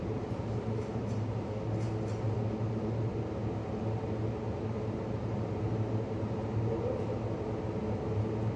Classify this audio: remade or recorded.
recorded